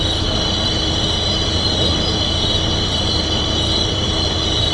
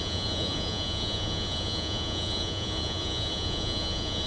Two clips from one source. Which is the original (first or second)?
first